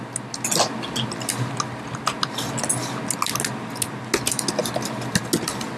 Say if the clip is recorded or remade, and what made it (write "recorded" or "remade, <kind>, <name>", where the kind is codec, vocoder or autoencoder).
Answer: recorded